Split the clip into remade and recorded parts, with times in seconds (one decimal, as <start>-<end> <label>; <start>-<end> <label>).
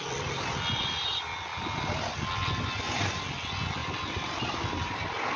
0.0-5.4 recorded